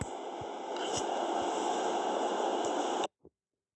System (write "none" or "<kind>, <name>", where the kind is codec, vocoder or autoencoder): none